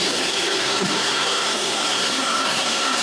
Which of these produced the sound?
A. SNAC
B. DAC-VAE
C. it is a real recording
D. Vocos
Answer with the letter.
A